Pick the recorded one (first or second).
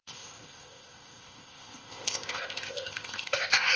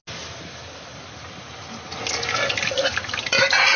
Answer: second